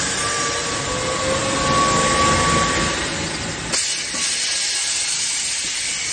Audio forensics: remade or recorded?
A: recorded